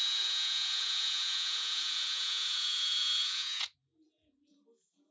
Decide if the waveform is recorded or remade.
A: remade